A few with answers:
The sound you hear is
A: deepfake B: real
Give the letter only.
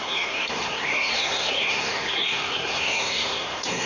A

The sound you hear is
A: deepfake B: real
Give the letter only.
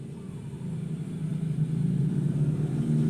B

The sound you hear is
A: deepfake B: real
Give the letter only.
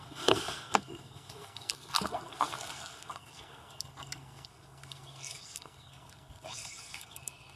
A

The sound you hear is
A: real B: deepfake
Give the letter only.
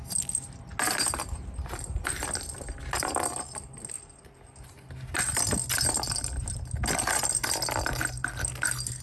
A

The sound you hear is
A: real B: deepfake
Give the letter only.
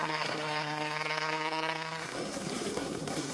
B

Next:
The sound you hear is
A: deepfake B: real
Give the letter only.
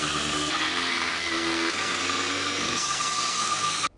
A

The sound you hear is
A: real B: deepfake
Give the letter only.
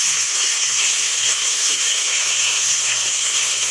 B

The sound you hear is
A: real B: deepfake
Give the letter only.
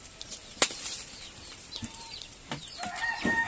A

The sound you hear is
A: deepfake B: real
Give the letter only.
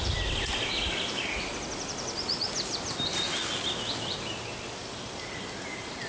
B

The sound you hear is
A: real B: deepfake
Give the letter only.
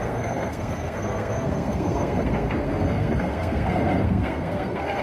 B